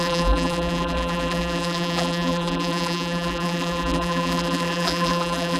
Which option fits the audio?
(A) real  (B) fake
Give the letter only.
B